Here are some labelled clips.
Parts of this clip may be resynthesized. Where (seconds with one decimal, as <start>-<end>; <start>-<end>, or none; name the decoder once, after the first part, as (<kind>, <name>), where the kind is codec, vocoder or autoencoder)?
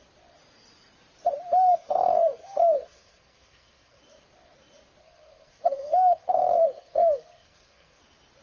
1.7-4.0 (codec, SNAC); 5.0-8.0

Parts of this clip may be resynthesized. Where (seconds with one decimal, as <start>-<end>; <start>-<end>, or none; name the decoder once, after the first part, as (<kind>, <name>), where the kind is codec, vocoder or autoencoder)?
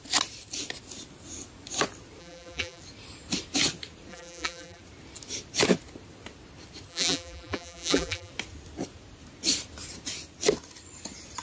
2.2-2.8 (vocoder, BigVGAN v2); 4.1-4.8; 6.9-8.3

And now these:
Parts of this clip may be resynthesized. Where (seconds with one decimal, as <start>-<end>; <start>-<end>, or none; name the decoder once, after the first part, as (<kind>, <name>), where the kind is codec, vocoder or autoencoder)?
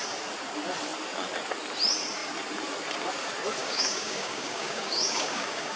3.6-5.8 (codec, DAC)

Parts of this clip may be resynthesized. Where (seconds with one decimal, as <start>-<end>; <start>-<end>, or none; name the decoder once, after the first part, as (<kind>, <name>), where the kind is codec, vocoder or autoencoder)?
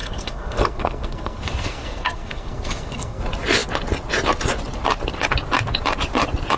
0.0-3.2 (codec, SNAC)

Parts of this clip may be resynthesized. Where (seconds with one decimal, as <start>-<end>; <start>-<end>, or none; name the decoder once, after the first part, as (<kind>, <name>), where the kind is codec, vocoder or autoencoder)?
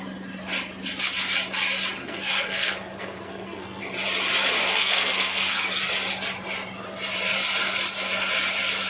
2.0-3.8 (codec, SNAC); 4.7-5.9